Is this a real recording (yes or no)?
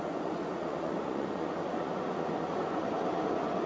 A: no